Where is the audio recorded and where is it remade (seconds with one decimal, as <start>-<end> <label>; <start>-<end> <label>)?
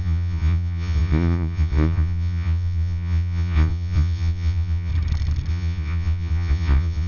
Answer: 0.0-4.9 remade; 4.9-5.5 recorded; 5.5-7.1 remade